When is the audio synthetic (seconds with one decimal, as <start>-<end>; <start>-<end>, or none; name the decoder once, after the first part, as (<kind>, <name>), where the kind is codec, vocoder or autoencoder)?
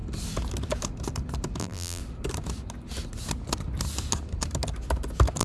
1.6-2.0 (vocoder, BigVGAN v2)